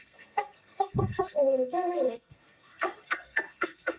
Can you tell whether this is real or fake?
fake